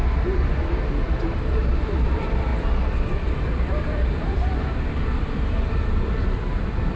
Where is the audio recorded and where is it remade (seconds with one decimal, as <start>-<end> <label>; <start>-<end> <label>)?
0.0-2.0 recorded; 2.0-2.5 remade; 2.5-3.1 recorded; 3.1-7.0 remade